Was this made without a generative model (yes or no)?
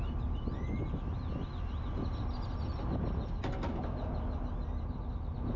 yes